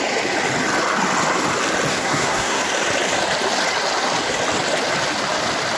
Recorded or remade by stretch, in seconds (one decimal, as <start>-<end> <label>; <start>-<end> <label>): 0.0-1.9 recorded; 1.9-2.6 remade; 2.6-5.8 recorded